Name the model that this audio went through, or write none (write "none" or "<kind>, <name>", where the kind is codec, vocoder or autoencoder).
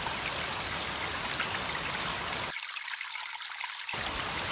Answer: none